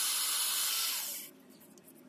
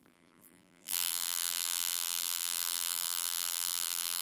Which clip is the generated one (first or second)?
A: second